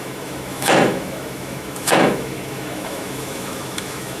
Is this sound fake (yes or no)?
yes